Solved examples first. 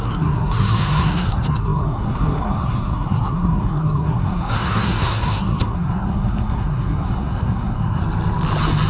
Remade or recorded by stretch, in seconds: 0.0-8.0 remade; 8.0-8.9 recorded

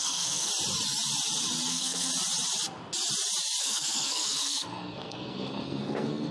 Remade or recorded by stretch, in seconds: 0.0-0.5 remade; 0.5-1.7 recorded; 1.7-2.1 remade; 2.1-3.6 recorded; 3.6-6.3 remade

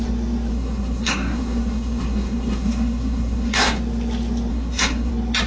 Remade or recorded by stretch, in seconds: 0.0-0.5 recorded; 0.5-3.8 remade; 3.8-4.5 recorded; 4.5-5.1 remade; 5.1-5.5 recorded

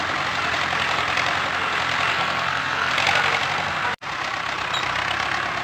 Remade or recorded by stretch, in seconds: 0.0-2.1 recorded; 2.1-2.9 remade; 2.9-5.6 recorded

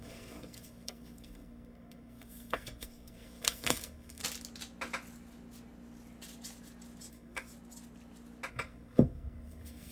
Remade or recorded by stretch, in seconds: 0.0-4.2 remade; 4.2-7.1 recorded; 7.1-7.5 remade; 7.5-8.5 recorded; 8.5-9.9 remade

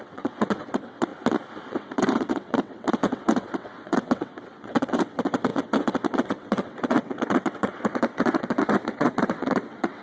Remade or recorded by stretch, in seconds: 0.0-1.1 remade; 1.1-1.7 recorded; 1.7-10.0 remade

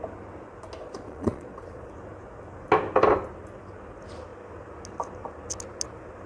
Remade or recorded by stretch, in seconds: 0.0-0.8 recorded; 0.8-1.9 remade; 1.9-6.3 recorded